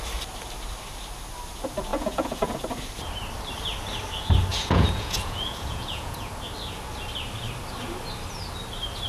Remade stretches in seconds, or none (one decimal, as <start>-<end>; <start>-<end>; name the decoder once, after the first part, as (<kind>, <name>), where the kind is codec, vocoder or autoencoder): 1.9-2.6 (vocoder, Vocos); 4.5-6.3